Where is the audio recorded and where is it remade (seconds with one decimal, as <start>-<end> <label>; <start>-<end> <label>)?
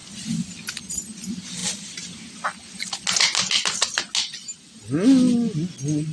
0.0-6.1 recorded